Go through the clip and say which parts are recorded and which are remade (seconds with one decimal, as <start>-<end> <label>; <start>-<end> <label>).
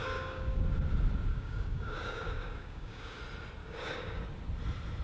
0.0-0.6 remade; 0.6-1.3 recorded; 1.3-3.2 remade; 3.2-3.6 recorded; 3.6-4.2 remade; 4.2-5.0 recorded